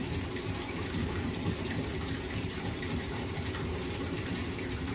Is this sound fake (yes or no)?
yes